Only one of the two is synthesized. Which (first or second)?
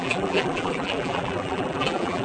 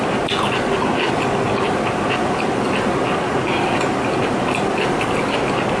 first